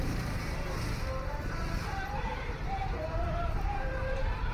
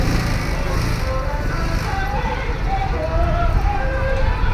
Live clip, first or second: second